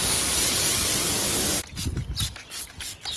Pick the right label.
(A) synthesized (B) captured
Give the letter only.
B